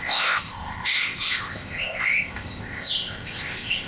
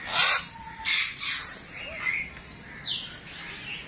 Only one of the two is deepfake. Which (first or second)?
first